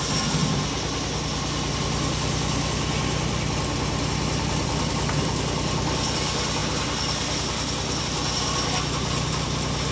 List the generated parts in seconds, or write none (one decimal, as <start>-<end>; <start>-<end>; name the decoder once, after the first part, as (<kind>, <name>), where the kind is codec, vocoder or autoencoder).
none